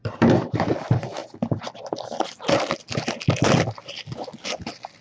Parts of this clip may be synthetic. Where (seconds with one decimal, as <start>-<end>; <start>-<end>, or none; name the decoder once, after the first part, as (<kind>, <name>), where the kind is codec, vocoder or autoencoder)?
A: 0.0-0.7 (vocoder, BigVGAN v2)